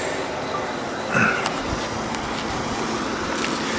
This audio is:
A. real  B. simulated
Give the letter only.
A